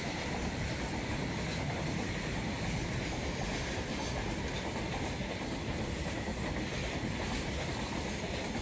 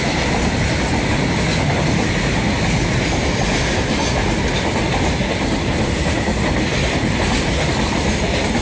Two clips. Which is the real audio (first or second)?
second